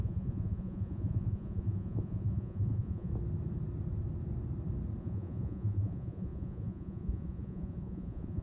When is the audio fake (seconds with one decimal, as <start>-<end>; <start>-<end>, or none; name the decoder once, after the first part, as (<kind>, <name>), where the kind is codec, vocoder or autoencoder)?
0.0-3.1 (vocoder, Vocos); 5.0-8.4